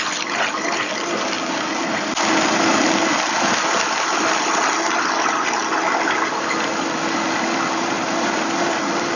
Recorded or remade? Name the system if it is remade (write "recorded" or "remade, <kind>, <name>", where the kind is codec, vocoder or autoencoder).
recorded